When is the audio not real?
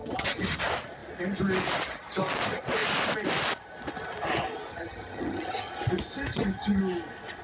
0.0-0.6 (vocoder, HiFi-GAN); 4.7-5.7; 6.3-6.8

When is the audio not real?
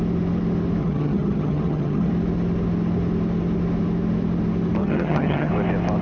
0.8-2.1 (vocoder, HiFi-GAN); 4.8-5.5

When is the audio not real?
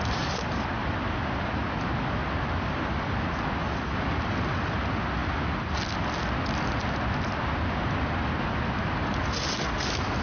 none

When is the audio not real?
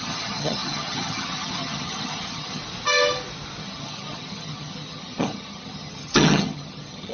0.0-2.6 (vocoder, HiFi-GAN); 3.6-7.1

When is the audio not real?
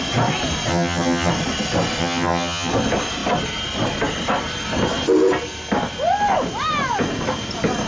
0.7-1.3 (vocoder, HiFi-GAN); 2.0-2.7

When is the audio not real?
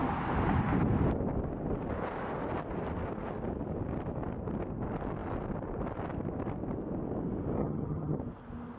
7.6-8.2 (vocoder, HiFi-GAN)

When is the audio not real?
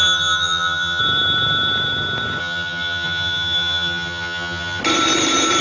0.0-1.0 (vocoder, HiFi-GAN); 2.4-4.8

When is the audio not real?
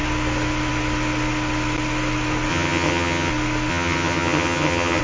2.5-3.3 (vocoder, HiFi-GAN); 3.7-5.0